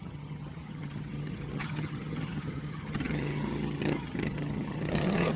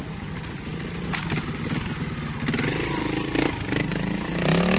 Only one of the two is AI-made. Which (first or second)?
first